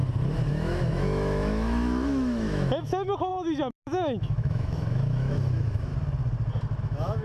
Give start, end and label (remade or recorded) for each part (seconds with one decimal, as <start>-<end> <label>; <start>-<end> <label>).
0.0-0.5 recorded; 0.5-5.9 remade; 5.9-6.8 recorded; 6.8-7.2 remade